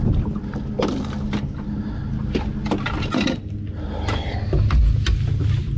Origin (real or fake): real